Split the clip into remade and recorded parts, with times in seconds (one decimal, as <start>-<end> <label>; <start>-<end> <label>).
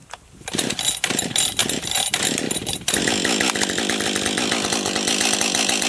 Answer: 0.0-5.9 recorded